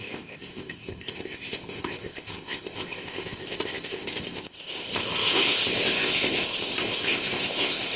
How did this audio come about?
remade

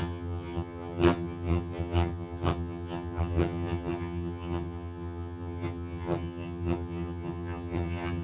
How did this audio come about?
remade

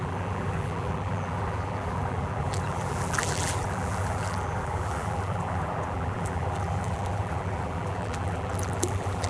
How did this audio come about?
remade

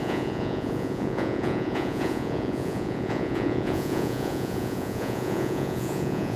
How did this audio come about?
remade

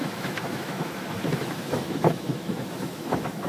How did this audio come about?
remade